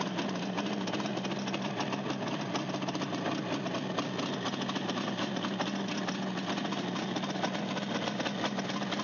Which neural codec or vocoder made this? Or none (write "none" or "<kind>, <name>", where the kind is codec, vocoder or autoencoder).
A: none